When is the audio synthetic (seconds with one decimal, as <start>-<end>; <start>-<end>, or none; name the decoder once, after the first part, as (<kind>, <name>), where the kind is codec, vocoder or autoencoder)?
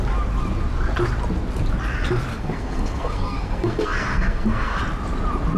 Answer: 2.3-4.8 (codec, SNAC)